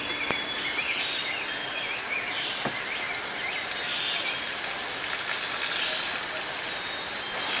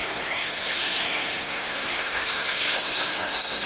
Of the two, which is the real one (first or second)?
first